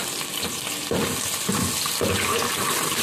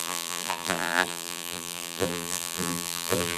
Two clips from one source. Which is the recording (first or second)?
first